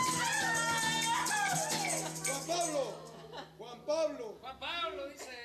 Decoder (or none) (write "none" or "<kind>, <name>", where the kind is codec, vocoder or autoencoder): none